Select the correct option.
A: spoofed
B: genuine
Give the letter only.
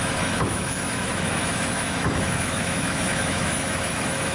A